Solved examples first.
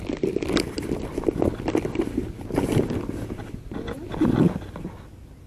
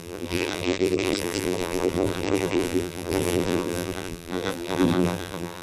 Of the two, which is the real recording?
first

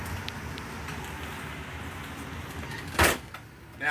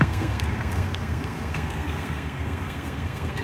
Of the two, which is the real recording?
first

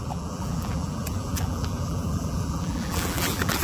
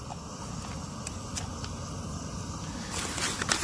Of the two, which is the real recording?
second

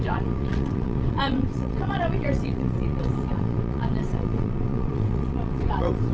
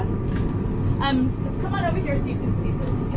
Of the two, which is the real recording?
second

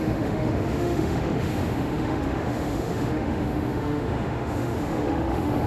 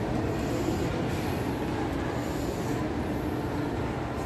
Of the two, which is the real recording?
second